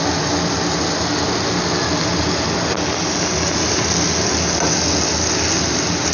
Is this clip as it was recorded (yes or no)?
yes